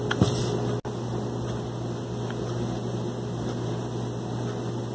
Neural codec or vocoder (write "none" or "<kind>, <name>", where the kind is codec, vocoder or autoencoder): none